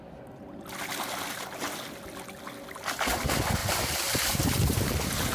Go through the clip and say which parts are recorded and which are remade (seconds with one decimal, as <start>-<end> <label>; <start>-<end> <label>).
0.0-3.6 recorded; 3.6-5.3 remade